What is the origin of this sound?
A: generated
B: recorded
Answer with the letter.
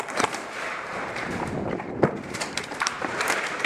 A